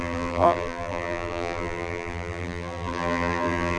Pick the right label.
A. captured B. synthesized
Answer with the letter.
B